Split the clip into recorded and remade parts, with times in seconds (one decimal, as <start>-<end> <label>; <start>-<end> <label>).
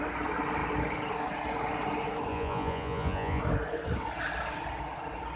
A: 0.0-2.3 recorded; 2.3-3.4 remade; 3.4-5.4 recorded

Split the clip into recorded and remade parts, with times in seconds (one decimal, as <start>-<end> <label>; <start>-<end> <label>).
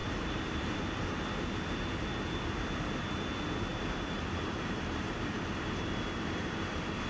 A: 0.0-0.8 remade; 0.8-3.7 recorded; 3.7-7.1 remade